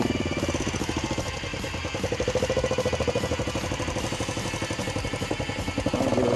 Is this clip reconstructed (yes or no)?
no